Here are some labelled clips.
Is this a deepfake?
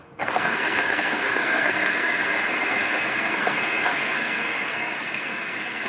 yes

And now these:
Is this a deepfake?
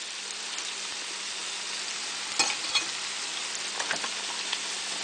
no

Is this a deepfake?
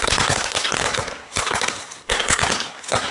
yes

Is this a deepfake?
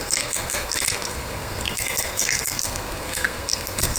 yes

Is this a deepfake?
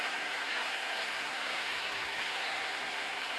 yes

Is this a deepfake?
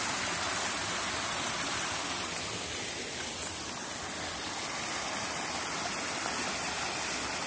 no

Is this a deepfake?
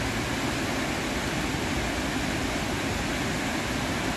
no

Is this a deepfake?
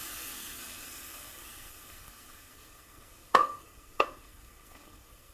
yes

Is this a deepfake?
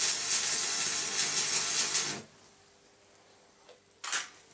no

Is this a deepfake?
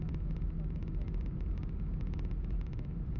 no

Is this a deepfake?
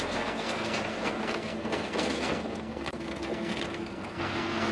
yes